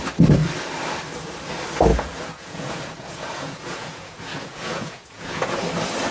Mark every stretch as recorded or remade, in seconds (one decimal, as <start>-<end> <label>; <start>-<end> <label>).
0.0-1.9 recorded; 1.9-5.6 remade; 5.6-6.1 recorded